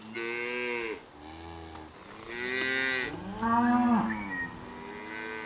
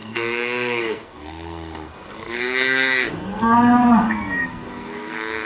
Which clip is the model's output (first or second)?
second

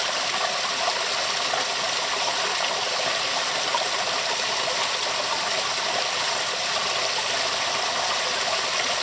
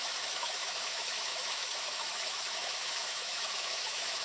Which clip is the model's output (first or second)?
second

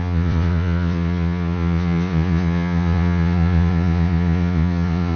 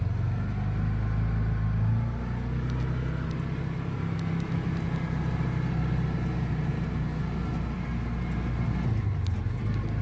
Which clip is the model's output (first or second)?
first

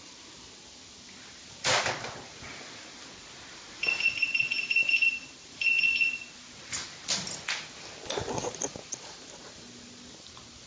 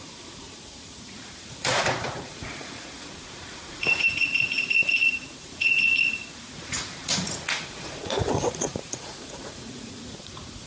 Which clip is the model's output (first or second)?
second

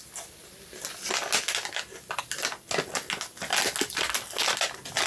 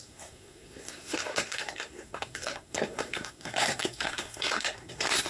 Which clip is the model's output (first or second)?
second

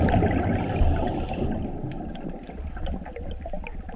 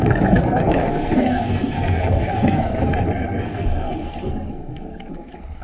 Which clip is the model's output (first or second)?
second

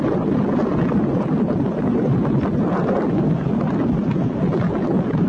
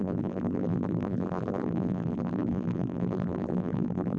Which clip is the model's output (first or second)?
second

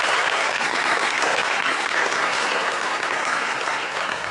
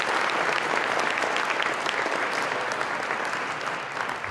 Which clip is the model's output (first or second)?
first